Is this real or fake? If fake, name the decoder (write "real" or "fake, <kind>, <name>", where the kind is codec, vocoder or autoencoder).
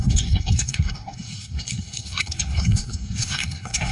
fake, codec, SNAC